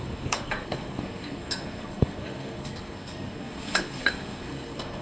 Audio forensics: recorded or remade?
remade